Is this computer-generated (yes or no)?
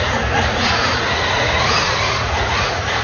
yes